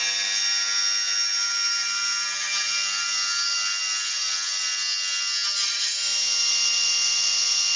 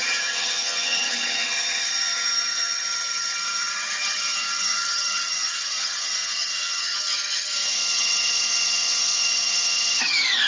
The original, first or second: first